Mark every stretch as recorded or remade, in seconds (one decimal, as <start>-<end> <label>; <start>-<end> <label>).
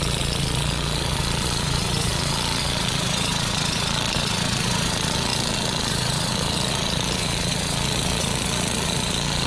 0.0-9.5 remade